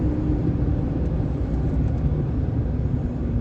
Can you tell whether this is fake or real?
fake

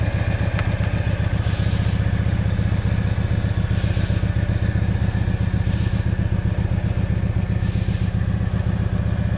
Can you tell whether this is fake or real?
real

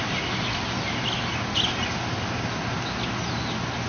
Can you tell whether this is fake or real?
real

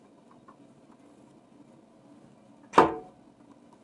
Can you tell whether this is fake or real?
real